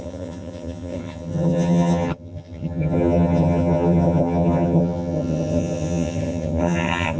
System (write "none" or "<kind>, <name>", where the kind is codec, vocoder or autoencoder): vocoder, HiFi-GAN